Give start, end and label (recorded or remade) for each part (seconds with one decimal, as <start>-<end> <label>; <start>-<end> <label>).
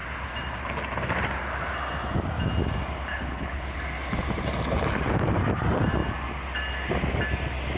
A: 0.0-3.1 recorded; 3.1-3.8 remade; 3.8-7.8 recorded